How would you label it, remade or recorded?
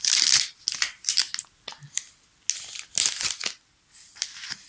recorded